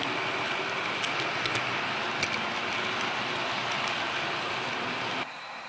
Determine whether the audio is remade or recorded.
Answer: recorded